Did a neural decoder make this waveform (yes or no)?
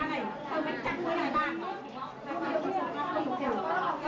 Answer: no